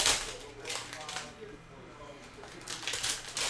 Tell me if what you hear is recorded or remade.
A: recorded